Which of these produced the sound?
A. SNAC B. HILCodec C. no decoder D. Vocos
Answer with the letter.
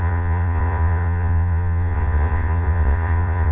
D